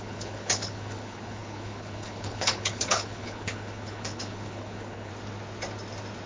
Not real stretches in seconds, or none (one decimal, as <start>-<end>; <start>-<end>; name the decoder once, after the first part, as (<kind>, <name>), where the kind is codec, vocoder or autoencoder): 0.0-5.1 (codec, HILCodec)

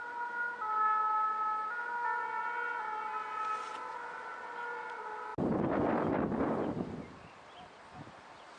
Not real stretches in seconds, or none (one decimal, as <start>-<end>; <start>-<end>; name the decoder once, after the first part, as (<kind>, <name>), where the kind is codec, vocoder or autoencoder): none

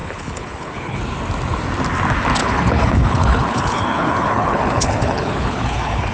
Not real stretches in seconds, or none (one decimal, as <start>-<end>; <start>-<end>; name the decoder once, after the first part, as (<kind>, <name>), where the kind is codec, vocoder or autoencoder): 0.0-1.0 (codec, HILCodec); 2.4-6.1

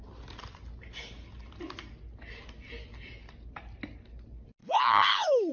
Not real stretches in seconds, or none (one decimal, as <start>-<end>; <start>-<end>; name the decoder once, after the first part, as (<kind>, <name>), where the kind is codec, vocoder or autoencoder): 4.6-5.5 (codec, HILCodec)

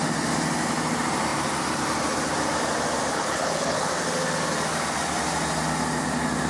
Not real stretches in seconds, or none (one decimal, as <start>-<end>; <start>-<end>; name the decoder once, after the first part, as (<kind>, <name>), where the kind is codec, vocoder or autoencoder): 3.1-3.9 (codec, HILCodec)